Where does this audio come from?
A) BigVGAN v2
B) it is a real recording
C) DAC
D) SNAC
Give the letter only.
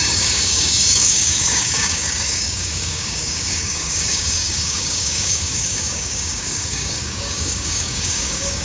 C